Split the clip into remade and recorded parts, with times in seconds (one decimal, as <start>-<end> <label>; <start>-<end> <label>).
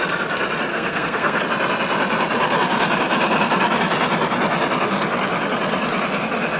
0.0-0.7 recorded; 0.7-1.4 remade; 1.4-6.6 recorded